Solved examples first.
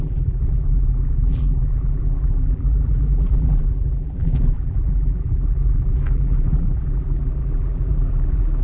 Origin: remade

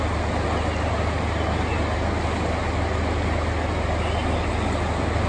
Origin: recorded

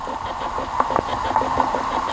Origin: remade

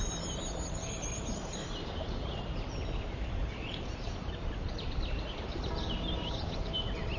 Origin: recorded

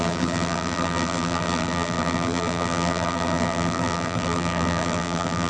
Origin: remade